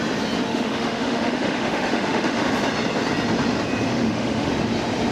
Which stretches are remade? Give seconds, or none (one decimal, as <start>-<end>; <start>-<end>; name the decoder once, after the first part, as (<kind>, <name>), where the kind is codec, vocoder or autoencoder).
0.5-2.5 (autoencoder, DAC-VAE); 3.9-4.5